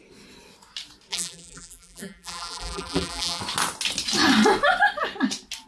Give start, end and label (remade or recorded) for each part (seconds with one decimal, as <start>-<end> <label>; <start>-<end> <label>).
0.0-1.1 recorded; 1.1-3.4 remade; 3.4-5.7 recorded